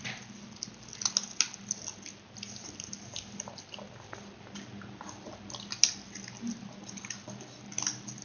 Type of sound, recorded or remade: recorded